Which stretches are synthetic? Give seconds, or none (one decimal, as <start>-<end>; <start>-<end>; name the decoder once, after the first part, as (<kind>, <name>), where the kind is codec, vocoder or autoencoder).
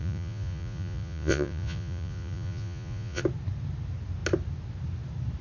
0.0-3.2 (vocoder, Vocos)